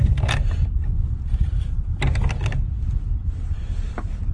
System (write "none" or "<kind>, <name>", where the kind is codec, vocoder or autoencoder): vocoder, BigVGAN v2